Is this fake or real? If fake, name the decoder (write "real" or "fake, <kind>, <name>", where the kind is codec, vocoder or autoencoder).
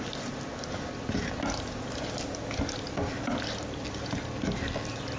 real